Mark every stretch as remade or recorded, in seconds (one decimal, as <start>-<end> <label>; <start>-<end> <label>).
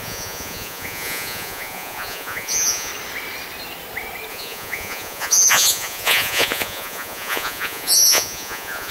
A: 0.0-2.9 remade; 2.9-4.3 recorded; 4.3-8.9 remade